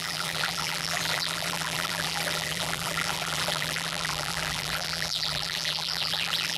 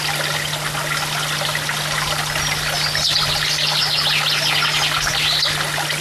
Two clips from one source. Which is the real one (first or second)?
second